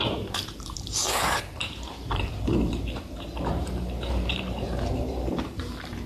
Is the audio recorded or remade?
remade